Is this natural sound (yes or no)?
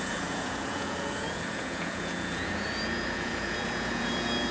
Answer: no